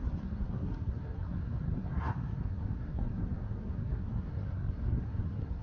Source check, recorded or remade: remade